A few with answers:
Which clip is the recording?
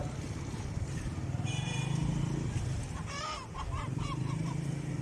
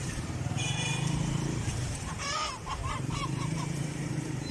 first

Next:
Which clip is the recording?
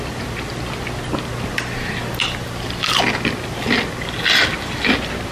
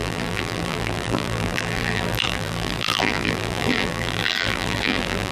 first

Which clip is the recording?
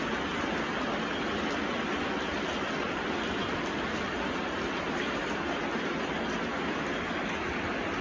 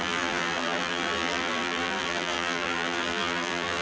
first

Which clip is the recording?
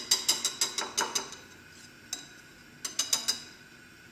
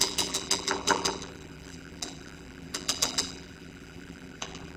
first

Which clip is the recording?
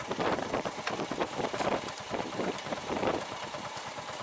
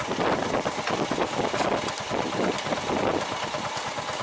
second